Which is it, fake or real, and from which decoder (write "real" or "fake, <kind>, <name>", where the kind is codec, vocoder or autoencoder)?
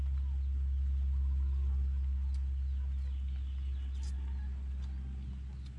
real